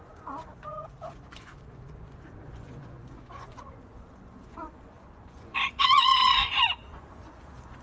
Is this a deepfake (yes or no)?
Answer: yes